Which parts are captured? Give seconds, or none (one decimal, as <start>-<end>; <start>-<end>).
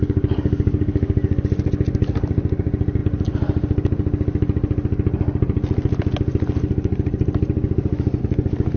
1.4-8.8